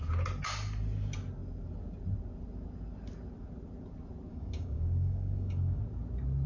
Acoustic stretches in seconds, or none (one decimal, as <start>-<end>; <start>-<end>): 0.0-4.3; 5.8-6.5